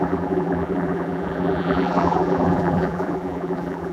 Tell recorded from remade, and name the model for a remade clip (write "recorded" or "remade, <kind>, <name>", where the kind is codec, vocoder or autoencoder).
remade, vocoder, BigVGAN v2